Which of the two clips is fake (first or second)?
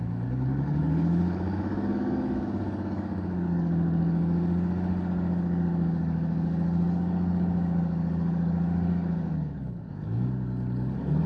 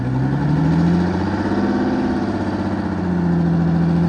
first